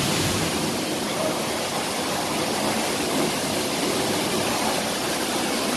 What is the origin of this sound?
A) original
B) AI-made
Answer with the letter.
B